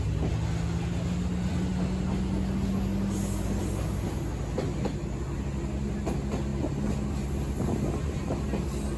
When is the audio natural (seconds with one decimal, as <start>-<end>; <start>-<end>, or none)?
0.0-9.0